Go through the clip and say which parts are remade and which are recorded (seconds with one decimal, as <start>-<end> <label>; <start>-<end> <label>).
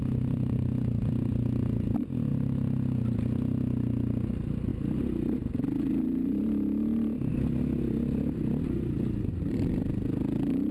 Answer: 0.0-10.7 recorded